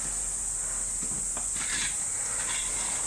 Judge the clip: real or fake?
real